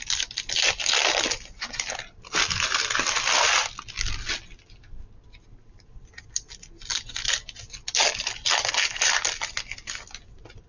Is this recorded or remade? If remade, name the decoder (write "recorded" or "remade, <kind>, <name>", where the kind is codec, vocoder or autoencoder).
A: recorded